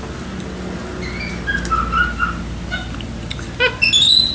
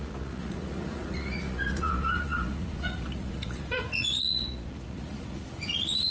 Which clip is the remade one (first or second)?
second